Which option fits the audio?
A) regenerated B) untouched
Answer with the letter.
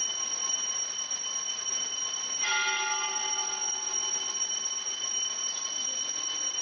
B